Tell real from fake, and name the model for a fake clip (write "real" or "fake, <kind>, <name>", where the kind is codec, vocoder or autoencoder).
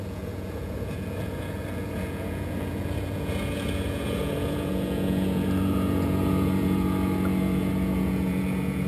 fake, vocoder, Vocos